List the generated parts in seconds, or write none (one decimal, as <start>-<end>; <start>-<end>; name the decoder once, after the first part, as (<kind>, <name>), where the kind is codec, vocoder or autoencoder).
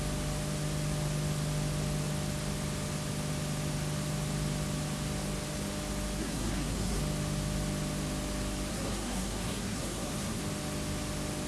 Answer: 6.2-7.0 (codec, SNAC); 8.7-10.4